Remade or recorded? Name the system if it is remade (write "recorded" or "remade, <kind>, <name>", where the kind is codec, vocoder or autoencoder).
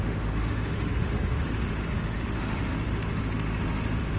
remade, autoencoder, DAC-VAE